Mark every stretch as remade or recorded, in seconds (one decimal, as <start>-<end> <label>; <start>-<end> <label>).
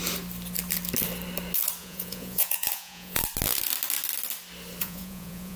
0.0-1.8 recorded; 1.8-3.2 remade; 3.2-4.8 recorded; 4.8-5.6 remade